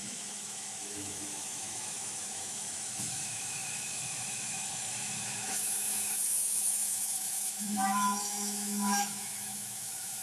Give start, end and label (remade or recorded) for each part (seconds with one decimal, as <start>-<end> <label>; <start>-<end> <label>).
0.0-10.2 remade